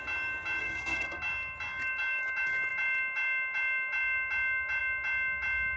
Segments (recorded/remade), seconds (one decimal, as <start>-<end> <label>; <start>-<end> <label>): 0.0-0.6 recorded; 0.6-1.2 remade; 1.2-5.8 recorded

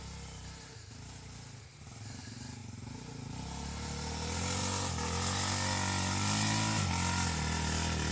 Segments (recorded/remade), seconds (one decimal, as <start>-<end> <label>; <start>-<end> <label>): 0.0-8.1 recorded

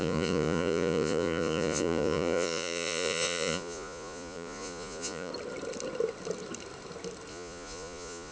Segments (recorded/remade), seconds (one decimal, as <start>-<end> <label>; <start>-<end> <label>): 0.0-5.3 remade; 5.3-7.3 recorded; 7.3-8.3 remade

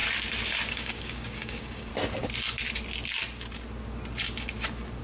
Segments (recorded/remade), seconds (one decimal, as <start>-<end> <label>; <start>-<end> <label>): 0.0-0.7 recorded; 0.7-1.9 remade; 1.9-5.0 recorded

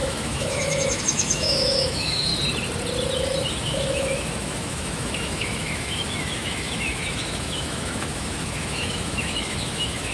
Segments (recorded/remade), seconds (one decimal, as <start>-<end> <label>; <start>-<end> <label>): 0.0-2.3 remade; 2.3-3.5 recorded; 3.5-10.1 remade